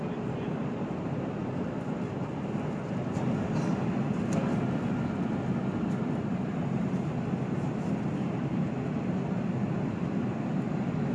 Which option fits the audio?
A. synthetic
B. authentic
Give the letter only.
B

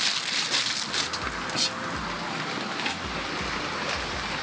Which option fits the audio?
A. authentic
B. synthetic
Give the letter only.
A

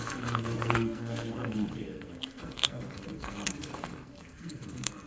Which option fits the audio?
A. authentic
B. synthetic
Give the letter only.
B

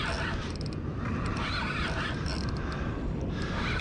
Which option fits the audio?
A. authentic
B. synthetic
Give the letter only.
A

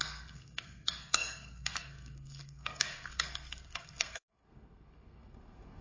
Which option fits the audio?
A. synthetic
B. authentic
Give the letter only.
A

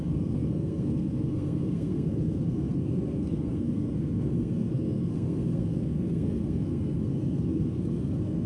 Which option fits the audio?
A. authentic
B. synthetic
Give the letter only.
B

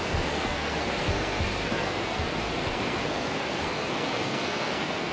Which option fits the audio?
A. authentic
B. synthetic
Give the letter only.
B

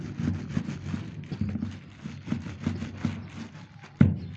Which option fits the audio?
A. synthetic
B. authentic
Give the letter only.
B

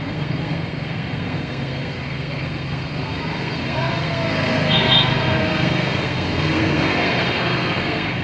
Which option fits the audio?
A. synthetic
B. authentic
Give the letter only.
A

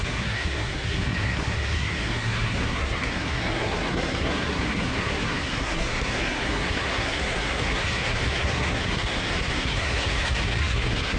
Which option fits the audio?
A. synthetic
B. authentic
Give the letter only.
A